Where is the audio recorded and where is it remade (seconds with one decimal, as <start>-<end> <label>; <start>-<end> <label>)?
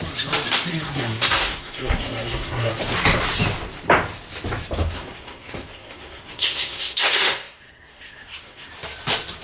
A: 0.0-0.7 recorded; 0.7-2.7 remade; 2.7-4.8 recorded; 4.8-8.7 remade; 8.7-9.4 recorded